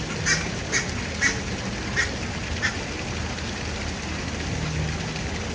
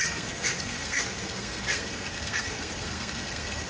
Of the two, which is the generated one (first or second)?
second